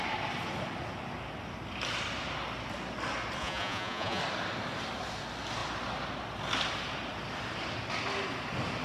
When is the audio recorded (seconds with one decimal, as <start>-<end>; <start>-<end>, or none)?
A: 0.0-3.4; 4.2-8.8